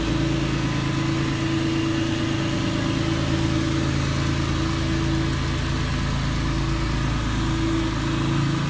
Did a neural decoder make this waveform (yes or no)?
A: no